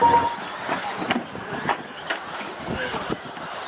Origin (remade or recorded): recorded